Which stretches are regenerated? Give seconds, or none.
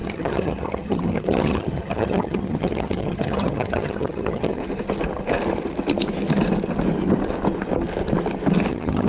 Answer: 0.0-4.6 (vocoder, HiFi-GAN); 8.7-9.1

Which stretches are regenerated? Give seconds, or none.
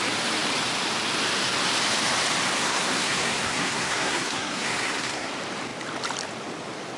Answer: 2.6-5.3 (codec, SNAC)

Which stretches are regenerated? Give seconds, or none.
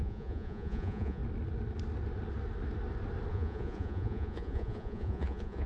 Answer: 0.0-1.2 (vocoder, Vocos); 3.3-5.7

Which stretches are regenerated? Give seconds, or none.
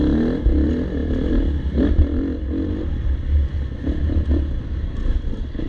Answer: none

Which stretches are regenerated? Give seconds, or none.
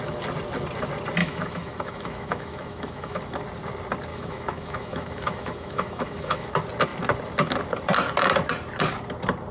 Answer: 1.2-3.2 (autoencoder, DAC-VAE); 4.1-6.5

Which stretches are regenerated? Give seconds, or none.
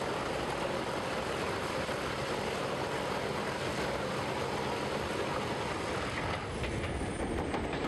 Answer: none